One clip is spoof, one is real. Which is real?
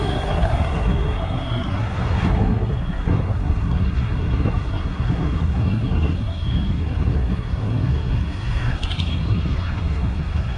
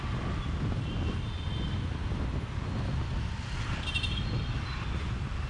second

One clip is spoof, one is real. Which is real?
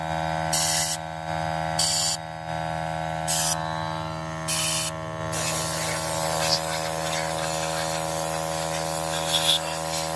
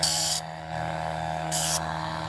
first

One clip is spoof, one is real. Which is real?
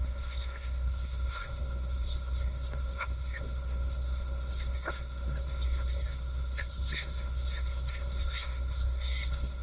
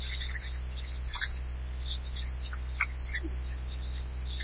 second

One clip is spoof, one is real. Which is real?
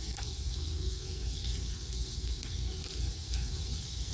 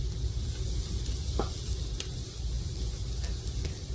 second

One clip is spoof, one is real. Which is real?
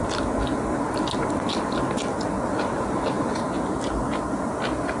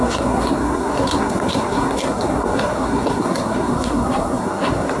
first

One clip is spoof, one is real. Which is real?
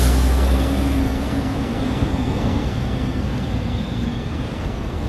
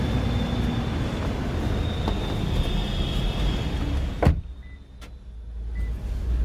second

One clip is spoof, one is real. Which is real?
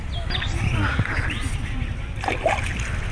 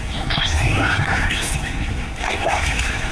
first